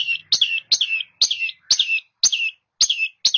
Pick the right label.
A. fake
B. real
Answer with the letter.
B